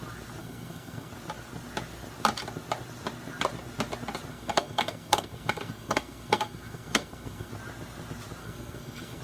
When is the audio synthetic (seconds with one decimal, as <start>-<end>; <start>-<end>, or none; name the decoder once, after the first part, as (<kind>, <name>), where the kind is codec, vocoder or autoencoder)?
0.4-1.1 (codec, SNAC); 4.3-7.5; 8.4-9.2